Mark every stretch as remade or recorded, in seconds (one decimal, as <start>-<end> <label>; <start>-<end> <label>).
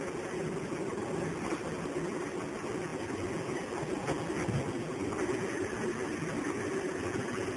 0.0-7.6 recorded